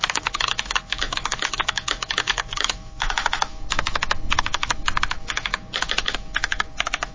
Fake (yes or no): yes